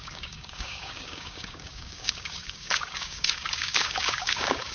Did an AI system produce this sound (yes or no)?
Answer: yes